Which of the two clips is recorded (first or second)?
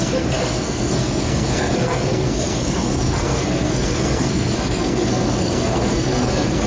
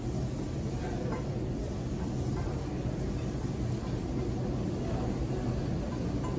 second